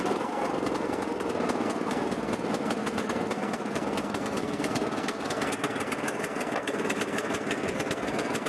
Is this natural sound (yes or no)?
no